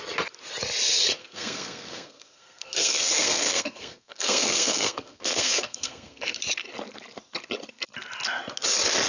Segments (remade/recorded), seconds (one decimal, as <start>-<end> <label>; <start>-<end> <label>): 0.0-1.2 recorded; 1.2-6.4 remade; 6.4-9.1 recorded